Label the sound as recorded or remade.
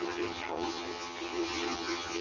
remade